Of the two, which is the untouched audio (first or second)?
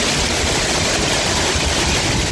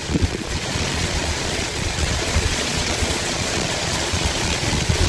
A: first